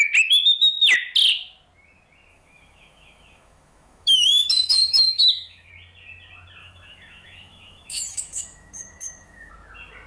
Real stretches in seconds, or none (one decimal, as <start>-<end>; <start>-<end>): 0.0-2.3; 5.7-6.6; 9.5-10.1